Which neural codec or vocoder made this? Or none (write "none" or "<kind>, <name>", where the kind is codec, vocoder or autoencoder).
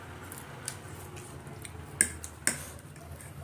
none